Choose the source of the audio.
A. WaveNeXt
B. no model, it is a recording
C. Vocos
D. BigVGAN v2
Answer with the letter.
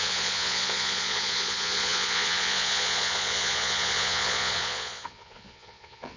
C